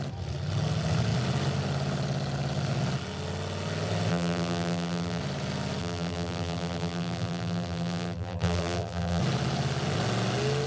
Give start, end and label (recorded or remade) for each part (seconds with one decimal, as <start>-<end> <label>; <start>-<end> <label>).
0.0-4.1 recorded; 4.1-5.2 remade; 5.2-5.8 recorded; 5.8-9.2 remade; 9.2-10.7 recorded